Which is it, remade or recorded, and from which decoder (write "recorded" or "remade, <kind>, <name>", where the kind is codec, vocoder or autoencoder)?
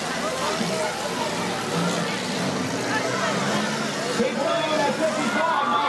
recorded